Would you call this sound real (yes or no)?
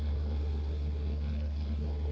no